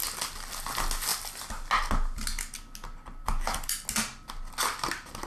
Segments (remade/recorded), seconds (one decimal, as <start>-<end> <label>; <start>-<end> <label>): 0.0-5.3 recorded